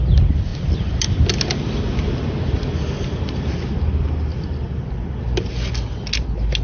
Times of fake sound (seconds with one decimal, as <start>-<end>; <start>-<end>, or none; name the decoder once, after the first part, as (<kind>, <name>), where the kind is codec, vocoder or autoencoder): none